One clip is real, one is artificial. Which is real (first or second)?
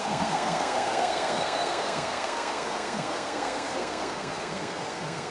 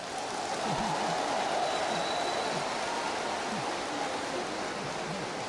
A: second